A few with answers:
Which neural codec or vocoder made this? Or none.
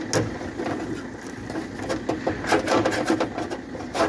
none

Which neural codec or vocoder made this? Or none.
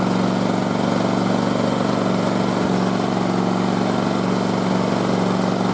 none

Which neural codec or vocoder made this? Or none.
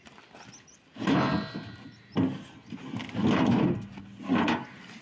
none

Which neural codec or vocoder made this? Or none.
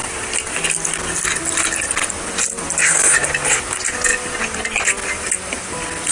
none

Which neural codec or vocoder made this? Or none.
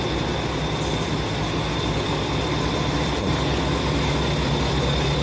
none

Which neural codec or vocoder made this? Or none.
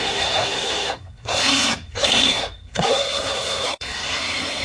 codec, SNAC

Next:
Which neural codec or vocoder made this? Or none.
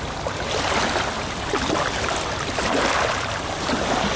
none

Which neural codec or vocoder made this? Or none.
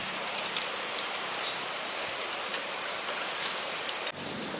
none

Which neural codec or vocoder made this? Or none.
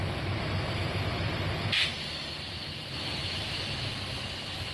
none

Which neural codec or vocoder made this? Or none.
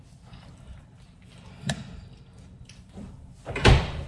vocoder, BigVGAN v2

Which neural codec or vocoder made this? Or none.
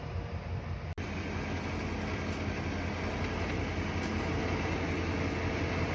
none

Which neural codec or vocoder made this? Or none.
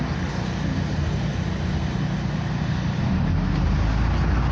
none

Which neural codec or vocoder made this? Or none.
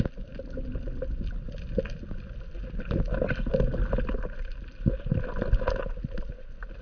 none